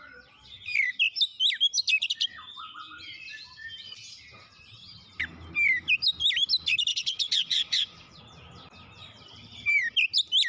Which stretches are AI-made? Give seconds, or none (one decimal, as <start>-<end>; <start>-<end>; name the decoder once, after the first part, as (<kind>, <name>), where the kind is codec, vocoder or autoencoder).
6.9-8.2 (vocoder, WaveNeXt)